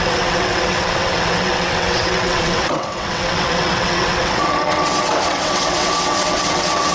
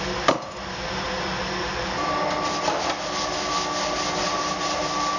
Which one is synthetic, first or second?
first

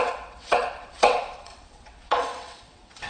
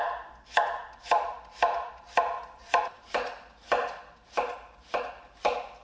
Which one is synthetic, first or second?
first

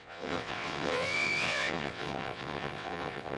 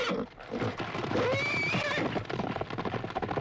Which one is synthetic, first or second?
first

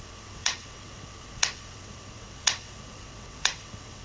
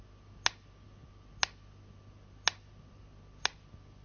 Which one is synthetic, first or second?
first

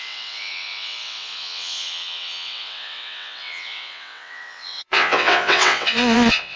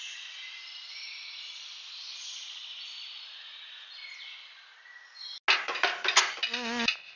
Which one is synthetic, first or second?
first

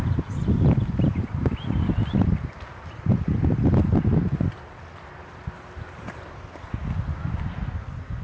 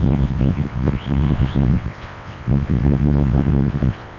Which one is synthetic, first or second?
second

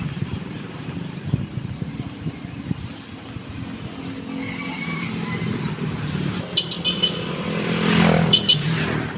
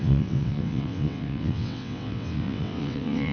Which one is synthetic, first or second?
second